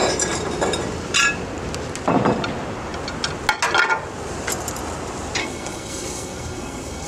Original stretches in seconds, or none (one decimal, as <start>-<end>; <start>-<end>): 0.0-5.4